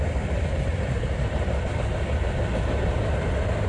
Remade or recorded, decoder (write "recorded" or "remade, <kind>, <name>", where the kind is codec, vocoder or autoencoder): remade, vocoder, BigVGAN v2